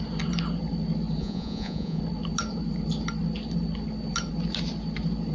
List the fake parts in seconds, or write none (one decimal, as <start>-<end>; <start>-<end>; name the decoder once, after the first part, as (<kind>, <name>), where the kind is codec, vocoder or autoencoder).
1.2-2.0 (vocoder, Vocos)